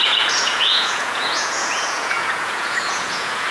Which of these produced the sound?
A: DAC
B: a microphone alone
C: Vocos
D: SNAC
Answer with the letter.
C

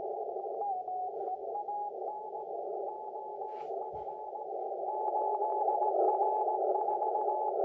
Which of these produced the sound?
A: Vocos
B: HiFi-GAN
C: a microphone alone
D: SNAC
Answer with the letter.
C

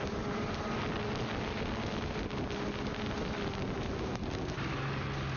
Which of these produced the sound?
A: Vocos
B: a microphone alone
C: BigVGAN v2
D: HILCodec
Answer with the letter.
B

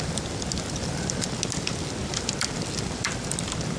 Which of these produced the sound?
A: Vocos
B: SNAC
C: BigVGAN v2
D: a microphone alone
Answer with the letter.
D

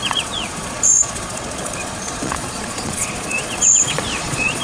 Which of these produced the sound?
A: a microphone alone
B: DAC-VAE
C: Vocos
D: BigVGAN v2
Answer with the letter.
C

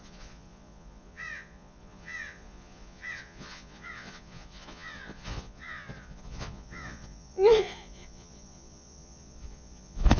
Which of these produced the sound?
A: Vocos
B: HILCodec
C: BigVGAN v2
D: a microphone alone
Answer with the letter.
A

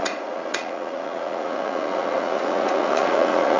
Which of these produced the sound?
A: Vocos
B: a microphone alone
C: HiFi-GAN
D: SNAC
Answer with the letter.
A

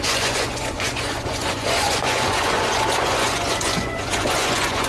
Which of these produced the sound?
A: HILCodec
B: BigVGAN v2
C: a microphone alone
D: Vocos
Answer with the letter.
D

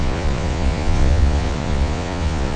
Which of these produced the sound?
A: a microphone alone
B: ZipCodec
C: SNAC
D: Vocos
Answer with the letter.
D